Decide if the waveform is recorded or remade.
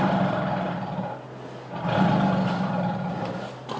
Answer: recorded